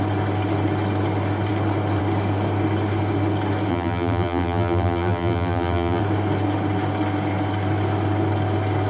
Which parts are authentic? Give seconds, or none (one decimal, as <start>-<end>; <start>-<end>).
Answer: 0.0-3.7; 6.0-8.9